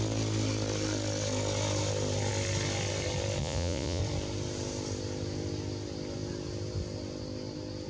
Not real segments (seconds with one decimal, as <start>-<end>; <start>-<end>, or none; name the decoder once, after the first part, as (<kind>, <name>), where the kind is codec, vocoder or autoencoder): 3.4-4.0 (vocoder, Vocos)